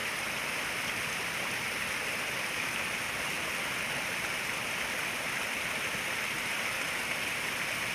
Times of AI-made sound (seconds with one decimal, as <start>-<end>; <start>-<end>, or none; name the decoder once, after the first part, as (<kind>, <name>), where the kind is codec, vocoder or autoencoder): none